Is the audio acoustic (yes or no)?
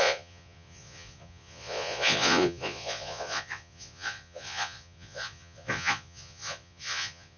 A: no